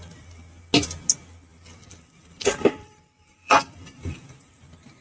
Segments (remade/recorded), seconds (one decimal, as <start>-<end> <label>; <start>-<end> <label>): 0.0-1.5 recorded; 1.5-4.5 remade; 4.5-5.0 recorded